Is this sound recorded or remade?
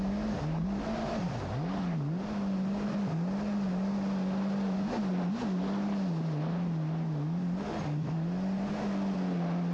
recorded